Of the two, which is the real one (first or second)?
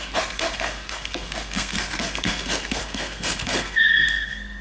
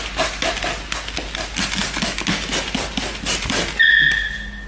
second